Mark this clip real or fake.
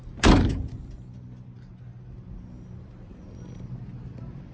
real